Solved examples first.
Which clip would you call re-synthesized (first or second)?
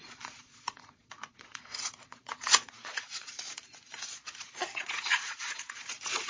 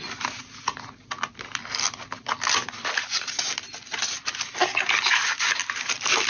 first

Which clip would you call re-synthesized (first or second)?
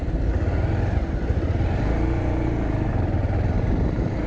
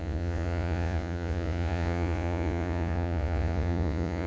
second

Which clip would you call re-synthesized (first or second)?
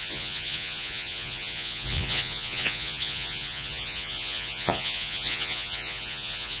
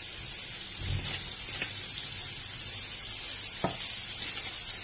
first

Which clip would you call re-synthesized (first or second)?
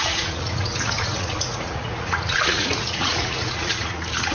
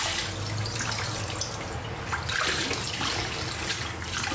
first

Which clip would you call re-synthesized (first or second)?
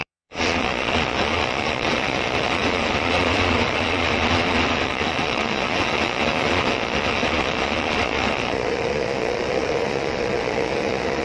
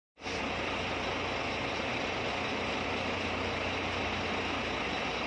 first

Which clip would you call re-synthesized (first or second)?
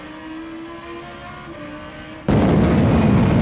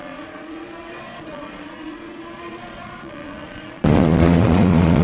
second